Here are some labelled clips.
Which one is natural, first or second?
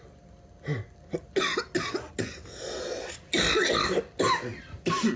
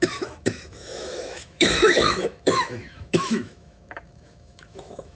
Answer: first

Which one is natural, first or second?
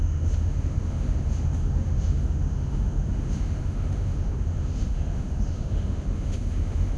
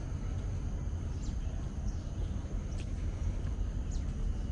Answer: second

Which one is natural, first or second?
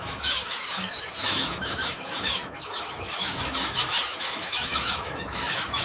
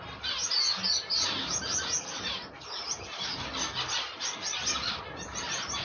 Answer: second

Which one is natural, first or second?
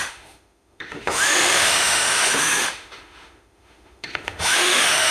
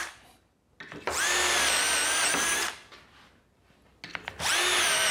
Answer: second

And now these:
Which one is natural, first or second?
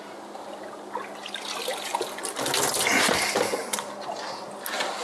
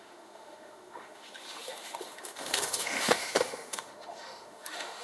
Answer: first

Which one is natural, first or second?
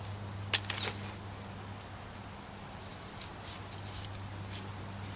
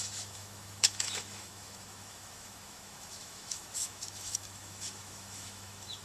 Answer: first